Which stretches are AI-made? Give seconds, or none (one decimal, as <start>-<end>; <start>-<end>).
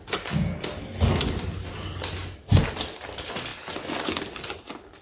none